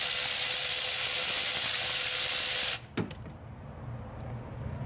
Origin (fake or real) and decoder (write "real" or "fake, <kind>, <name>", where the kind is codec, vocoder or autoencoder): real